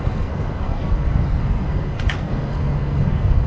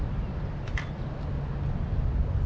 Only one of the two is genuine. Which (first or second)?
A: second